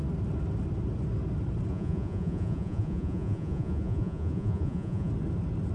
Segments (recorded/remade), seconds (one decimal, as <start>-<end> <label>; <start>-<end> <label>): 0.0-1.7 recorded; 1.7-5.1 remade; 5.1-5.7 recorded